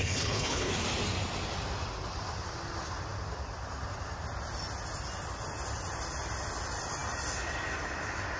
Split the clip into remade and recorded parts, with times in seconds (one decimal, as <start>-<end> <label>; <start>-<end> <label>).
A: 0.0-0.7 remade; 0.7-8.4 recorded